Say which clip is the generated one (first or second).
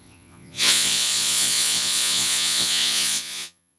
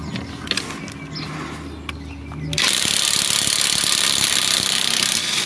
first